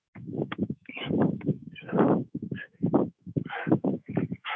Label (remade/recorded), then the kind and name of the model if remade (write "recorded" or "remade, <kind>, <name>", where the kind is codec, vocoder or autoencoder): remade, autoencoder, DAC-VAE